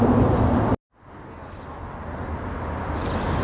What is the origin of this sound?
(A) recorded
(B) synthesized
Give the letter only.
A